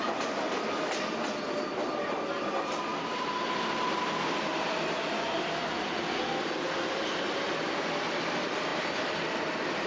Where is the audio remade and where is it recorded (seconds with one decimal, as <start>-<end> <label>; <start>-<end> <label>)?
0.0-9.9 recorded